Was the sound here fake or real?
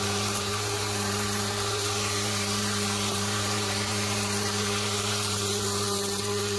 fake